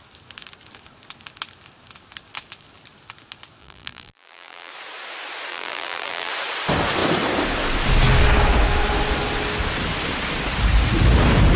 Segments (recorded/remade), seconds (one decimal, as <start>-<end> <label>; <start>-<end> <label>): 0.0-3.6 recorded; 3.6-4.7 remade; 4.7-5.5 recorded; 5.5-6.3 remade; 6.3-11.6 recorded